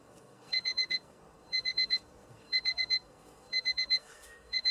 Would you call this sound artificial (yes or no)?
yes